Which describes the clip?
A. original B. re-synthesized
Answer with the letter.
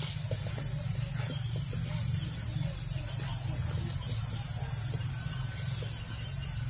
A